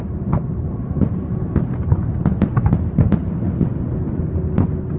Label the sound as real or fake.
real